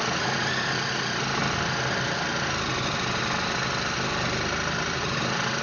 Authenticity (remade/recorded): recorded